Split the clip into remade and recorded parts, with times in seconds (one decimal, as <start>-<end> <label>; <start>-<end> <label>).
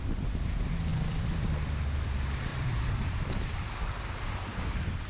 0.0-0.9 recorded; 0.9-1.5 remade; 1.5-2.5 recorded; 2.5-5.1 remade